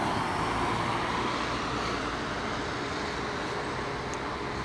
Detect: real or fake real